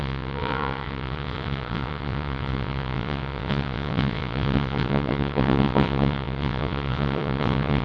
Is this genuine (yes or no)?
no